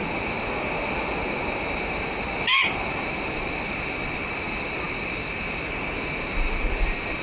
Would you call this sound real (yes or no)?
yes